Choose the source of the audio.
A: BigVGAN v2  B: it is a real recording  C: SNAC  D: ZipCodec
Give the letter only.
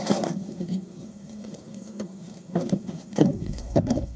C